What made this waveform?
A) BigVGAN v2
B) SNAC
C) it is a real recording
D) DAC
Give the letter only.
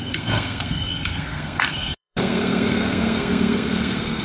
B